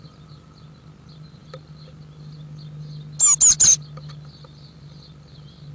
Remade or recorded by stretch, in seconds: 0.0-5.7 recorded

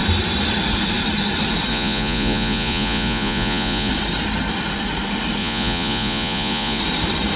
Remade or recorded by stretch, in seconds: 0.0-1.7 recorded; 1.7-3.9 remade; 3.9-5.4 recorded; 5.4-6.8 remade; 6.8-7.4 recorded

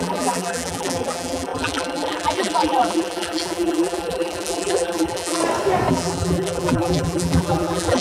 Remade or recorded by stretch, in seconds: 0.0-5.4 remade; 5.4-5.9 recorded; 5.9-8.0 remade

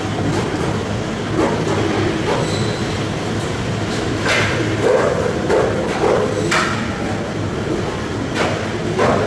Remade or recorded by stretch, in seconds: 0.0-2.8 recorded; 2.8-5.5 remade; 5.5-9.3 recorded

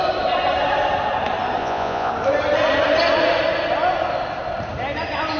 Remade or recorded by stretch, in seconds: 0.0-1.6 recorded; 1.6-2.1 remade; 2.1-5.4 recorded

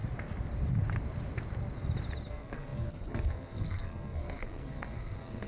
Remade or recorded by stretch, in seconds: 0.0-2.3 recorded; 2.3-5.5 remade

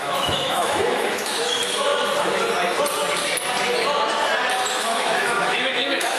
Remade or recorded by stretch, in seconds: 0.0-1.9 remade; 1.9-4.7 recorded; 4.7-6.2 remade